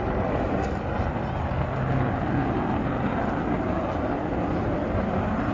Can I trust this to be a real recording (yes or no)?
yes